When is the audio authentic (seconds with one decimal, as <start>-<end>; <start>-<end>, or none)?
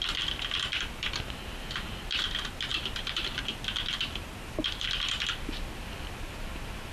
0.0-6.9